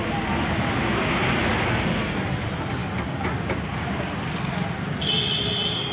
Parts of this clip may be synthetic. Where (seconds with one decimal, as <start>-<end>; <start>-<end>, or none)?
none

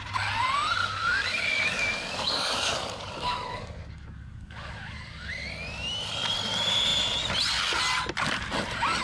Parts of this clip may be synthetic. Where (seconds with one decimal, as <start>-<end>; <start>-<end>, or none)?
0.8-5.3

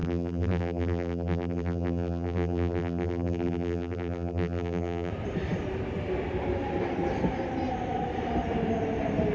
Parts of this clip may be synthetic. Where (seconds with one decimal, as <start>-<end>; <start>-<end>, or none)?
0.0-5.1

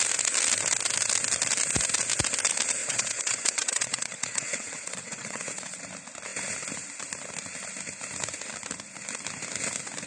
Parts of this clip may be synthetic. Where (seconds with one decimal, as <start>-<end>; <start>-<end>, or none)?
2.8-5.8

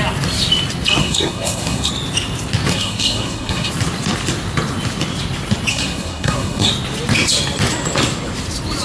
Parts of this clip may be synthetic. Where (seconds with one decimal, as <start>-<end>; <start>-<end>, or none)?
1.0-1.9; 2.7-3.7; 5.7-6.7

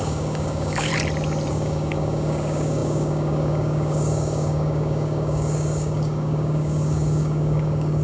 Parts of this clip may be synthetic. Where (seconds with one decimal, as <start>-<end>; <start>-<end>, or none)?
0.0-0.9; 1.5-8.0

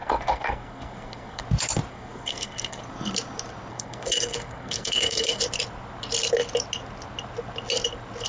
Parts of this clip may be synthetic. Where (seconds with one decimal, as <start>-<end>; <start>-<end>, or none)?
0.0-1.4; 1.9-2.8; 3.7-5.4